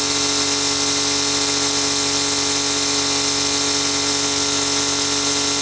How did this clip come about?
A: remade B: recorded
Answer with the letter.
B